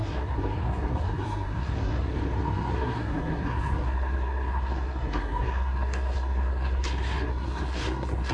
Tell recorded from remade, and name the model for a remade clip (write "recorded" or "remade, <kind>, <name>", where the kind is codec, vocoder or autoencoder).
remade, codec, SNAC